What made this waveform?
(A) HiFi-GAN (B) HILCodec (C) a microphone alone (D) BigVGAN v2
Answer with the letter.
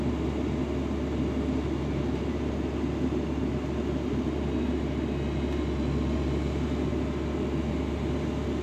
C